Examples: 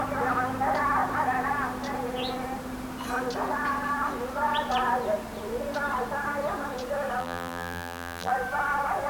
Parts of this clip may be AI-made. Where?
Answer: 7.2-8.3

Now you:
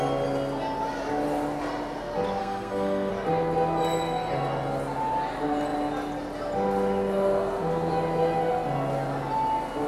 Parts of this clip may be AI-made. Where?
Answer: 2.4-3.1

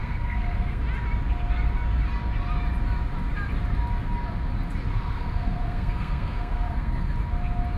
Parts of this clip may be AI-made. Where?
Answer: 0.0-0.8; 4.9-7.1

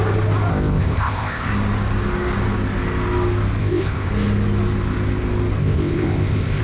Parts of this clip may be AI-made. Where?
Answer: 0.5-1.5; 3.6-4.1; 5.6-6.6